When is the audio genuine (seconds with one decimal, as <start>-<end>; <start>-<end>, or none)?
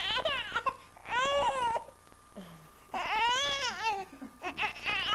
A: 0.0-1.0; 4.1-5.1